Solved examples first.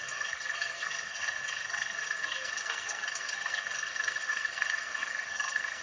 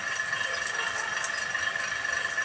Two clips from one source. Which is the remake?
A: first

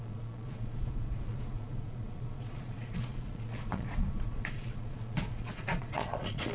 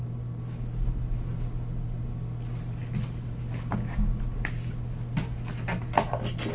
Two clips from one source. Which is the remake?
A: first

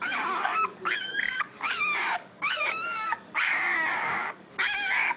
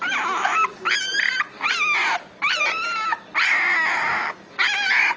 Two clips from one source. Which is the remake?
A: first